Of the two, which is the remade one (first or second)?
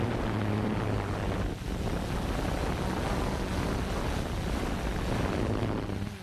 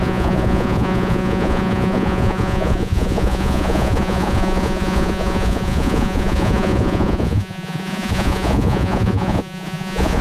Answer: second